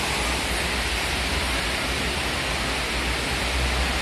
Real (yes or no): yes